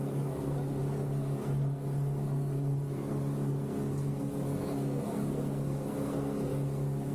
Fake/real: fake